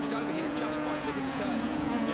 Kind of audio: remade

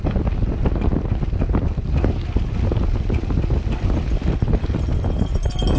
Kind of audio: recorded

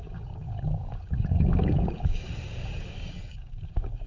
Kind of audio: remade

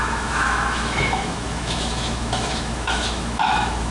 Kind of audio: remade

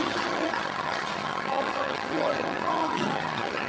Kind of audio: remade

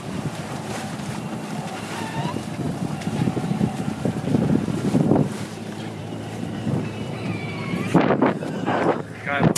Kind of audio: remade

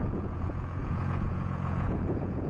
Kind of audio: remade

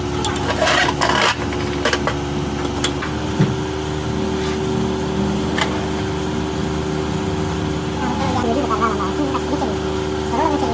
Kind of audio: recorded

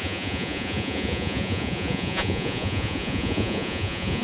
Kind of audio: remade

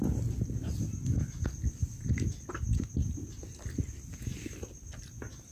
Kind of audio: recorded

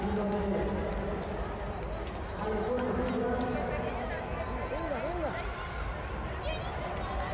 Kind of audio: recorded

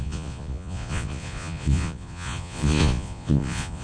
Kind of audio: remade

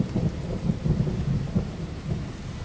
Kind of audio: recorded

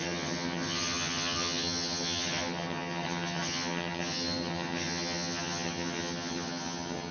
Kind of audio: remade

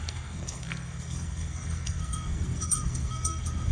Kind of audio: remade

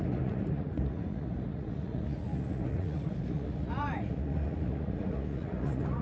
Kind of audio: remade